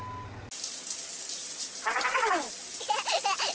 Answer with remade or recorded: recorded